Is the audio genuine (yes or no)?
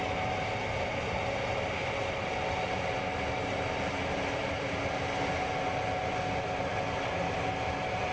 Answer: yes